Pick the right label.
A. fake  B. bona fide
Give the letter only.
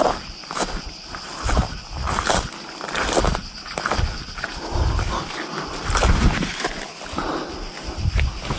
B